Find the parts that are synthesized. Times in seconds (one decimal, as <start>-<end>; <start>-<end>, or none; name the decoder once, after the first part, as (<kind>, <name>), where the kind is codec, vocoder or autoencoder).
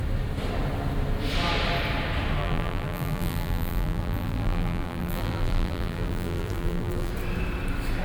2.4-7.1 (vocoder, BigVGAN v2)